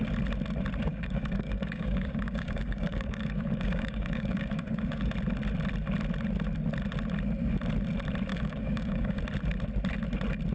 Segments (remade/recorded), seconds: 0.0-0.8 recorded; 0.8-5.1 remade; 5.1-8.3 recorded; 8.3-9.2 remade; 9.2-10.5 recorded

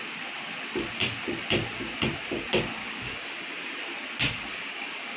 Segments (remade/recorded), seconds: 0.0-2.8 recorded; 2.8-3.5 remade; 3.5-4.5 recorded; 4.5-5.2 remade